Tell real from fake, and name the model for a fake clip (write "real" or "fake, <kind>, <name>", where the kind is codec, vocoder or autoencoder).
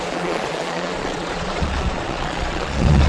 fake, vocoder, Vocos